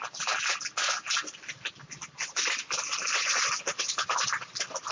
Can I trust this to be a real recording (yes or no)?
no